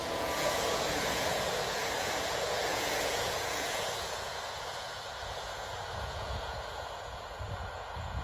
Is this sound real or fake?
fake